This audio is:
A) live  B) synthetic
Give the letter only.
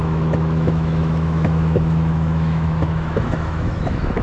B